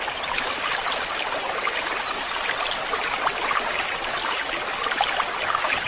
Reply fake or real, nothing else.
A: real